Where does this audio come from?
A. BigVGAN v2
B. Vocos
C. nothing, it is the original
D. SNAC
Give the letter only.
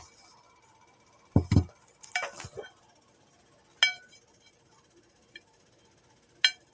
C